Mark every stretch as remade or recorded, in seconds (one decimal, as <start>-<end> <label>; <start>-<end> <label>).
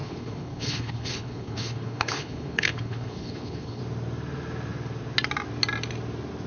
0.0-3.8 remade; 3.8-6.5 recorded